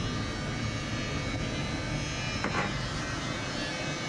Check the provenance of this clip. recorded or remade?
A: recorded